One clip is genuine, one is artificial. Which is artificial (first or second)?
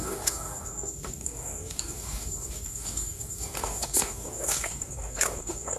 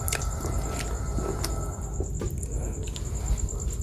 first